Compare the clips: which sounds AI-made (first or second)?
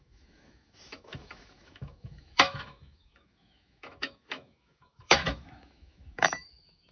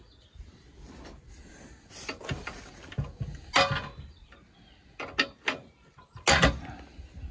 first